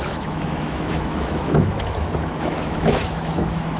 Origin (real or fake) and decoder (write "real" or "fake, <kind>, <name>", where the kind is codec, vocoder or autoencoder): fake, autoencoder, DAC-VAE